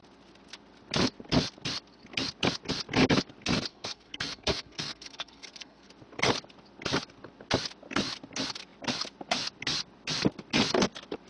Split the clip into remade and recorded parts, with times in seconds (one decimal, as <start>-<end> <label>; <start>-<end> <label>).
0.0-3.7 recorded; 3.7-5.9 remade; 5.9-11.3 recorded